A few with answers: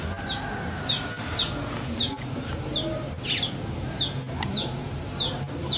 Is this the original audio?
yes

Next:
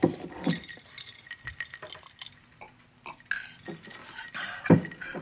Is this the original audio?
yes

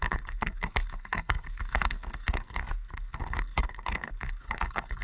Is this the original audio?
no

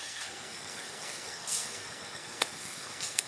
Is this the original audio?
no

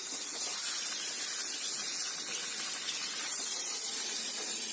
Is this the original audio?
yes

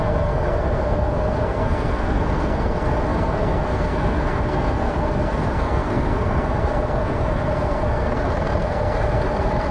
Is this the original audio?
no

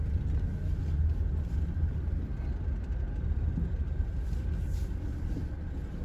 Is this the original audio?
yes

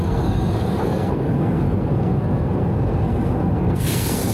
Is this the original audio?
no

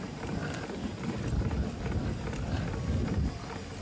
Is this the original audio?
yes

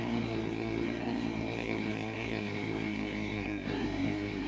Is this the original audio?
no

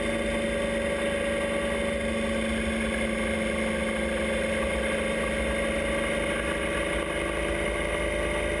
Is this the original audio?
yes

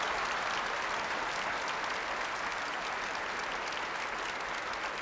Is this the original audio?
yes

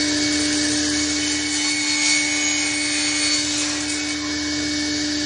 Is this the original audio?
yes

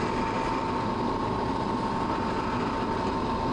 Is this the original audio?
yes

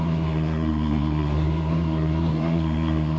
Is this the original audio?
no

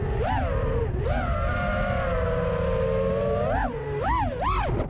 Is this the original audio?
yes